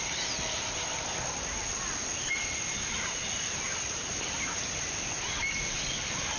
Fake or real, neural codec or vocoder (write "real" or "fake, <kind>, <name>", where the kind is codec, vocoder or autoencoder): real